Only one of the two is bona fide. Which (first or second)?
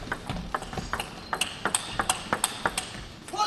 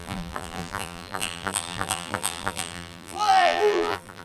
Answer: first